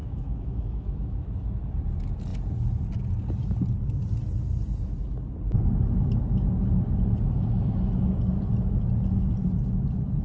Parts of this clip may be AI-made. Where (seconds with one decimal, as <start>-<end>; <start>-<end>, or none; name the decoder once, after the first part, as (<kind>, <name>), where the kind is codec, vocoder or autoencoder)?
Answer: 0.0-1.3 (autoencoder, DAC-VAE)